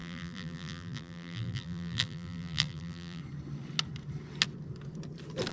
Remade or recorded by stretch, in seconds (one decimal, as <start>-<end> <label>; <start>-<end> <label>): 0.0-3.2 remade; 3.2-5.5 recorded